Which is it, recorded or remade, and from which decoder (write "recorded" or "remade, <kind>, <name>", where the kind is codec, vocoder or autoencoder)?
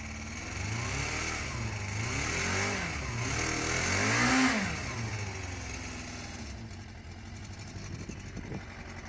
recorded